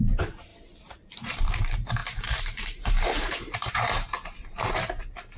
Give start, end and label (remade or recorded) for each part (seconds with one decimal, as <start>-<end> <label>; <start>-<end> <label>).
0.0-0.5 remade; 0.5-1.2 recorded; 1.2-5.4 remade